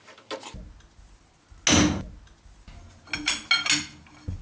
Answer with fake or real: real